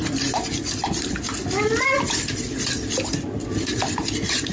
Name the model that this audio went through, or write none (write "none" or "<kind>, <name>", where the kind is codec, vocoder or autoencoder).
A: none